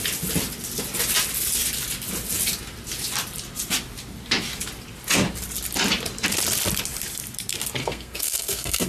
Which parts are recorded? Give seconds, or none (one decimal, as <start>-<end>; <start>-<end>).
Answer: 0.0-7.8